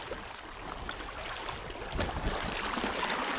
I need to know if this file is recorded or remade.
recorded